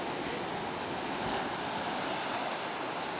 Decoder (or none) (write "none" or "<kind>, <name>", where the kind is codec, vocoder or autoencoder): none